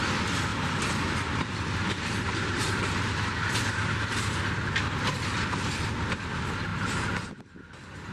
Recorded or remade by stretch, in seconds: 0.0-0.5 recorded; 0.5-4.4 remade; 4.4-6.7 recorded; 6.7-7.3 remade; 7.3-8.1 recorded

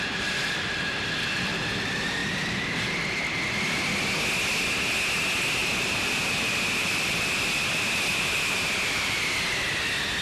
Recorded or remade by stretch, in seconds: 0.0-2.2 recorded; 2.2-3.2 remade; 3.2-5.6 recorded; 5.6-7.5 remade; 7.5-8.1 recorded; 8.1-9.3 remade; 9.3-10.2 recorded